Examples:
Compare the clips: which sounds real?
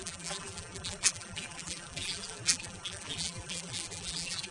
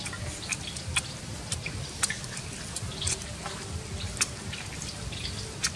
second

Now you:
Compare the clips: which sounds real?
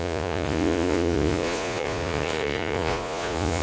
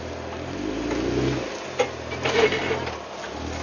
second